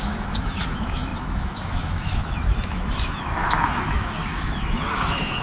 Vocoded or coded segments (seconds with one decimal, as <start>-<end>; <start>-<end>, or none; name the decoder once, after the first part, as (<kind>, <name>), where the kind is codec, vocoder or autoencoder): 0.0-5.4 (autoencoder, DAC-VAE)